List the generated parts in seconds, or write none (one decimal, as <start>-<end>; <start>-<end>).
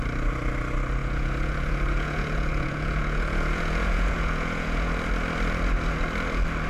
1.0-4.9